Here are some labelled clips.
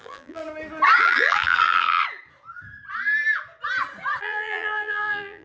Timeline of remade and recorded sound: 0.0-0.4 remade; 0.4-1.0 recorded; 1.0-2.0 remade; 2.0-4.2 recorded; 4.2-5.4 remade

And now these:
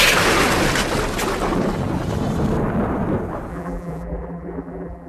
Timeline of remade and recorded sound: 0.0-3.5 recorded; 3.5-5.1 remade

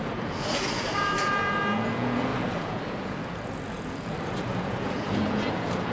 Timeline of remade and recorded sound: 0.0-5.9 remade

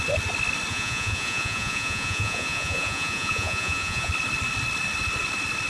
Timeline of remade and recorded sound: 0.0-0.7 recorded; 0.7-4.1 remade; 4.1-5.7 recorded

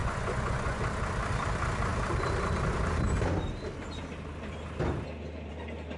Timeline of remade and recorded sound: 0.0-0.8 remade; 0.8-6.0 recorded

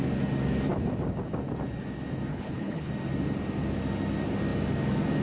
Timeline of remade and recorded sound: 0.0-2.3 recorded; 2.3-2.9 remade; 2.9-5.2 recorded

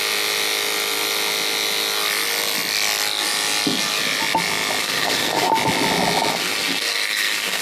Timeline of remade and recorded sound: 0.0-4.8 recorded; 4.8-5.5 remade; 5.5-6.3 recorded; 6.3-7.6 remade